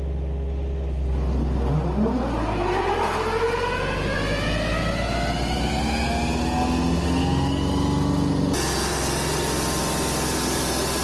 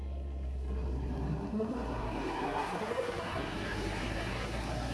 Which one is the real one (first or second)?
first